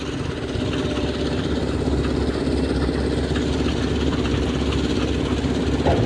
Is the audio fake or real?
real